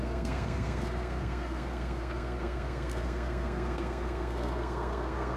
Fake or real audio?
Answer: fake